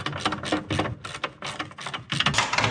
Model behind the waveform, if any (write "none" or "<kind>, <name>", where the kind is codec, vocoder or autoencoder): none